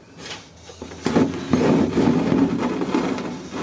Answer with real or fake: real